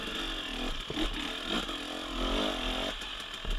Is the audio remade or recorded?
recorded